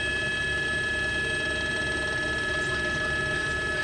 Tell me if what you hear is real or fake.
real